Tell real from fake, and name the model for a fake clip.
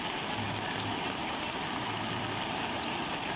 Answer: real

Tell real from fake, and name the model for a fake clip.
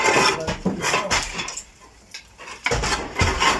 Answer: real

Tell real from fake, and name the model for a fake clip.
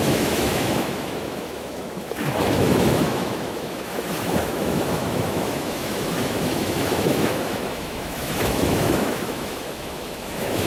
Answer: fake, autoencoder, DAC-VAE